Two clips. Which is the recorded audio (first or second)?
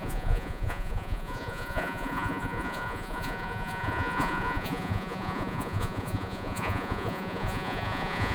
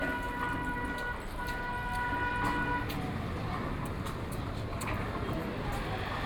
second